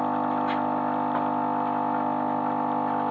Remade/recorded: recorded